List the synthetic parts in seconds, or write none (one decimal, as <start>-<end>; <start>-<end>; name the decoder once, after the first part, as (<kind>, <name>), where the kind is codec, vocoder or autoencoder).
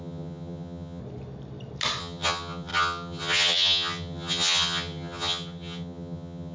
0.0-1.0 (vocoder, HiFi-GAN); 2.0-6.5